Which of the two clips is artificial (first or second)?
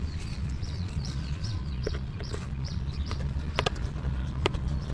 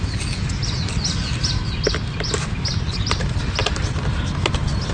first